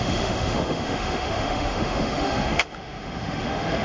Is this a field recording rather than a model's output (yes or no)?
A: no